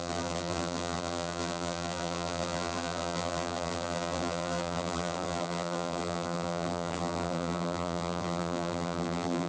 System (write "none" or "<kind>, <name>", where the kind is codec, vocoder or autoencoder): vocoder, BigVGAN v2